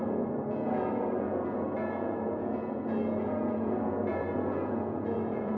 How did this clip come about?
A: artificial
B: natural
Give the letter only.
A